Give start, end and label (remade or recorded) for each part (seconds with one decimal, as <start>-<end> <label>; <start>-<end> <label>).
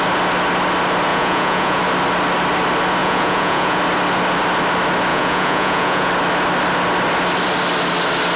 0.0-1.1 recorded; 1.1-1.8 remade; 1.8-3.0 recorded; 3.0-3.8 remade; 3.8-5.1 recorded; 5.1-6.1 remade; 6.1-8.4 recorded